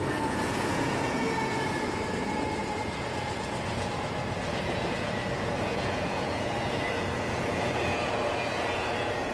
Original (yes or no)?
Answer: no